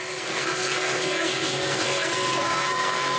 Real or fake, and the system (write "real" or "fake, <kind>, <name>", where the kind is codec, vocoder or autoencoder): fake, codec, SNAC